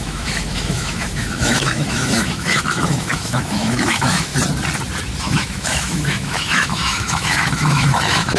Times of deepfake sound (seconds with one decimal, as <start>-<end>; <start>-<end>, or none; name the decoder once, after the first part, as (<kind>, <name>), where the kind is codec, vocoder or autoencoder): 0.0-4.3 (autoencoder, DAC-VAE); 5.2-8.4